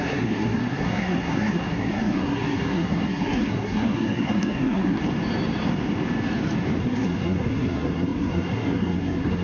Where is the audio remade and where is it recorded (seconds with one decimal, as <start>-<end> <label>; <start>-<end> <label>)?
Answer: 0.0-5.0 remade; 5.0-6.8 recorded; 6.8-9.4 remade